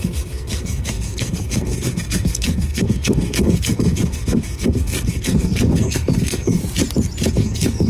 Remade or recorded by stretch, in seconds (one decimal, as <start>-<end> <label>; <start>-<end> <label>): 0.0-6.6 remade; 6.6-7.3 recorded; 7.3-7.9 remade